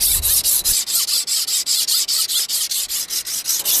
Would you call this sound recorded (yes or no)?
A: yes